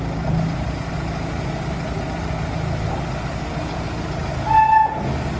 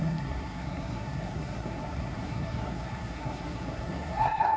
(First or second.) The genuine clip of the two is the first